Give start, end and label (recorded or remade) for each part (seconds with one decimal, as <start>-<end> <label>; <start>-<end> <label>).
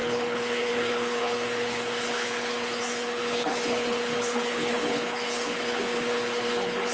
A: 0.0-6.9 remade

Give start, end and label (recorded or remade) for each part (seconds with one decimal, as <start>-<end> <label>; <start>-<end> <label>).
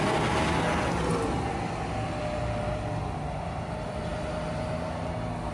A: 0.0-5.5 recorded